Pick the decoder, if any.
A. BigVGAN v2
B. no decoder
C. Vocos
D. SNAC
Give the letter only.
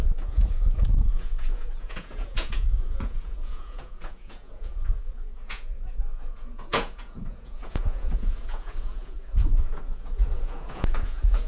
C